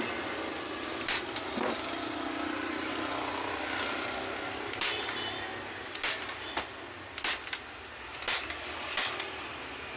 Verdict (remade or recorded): recorded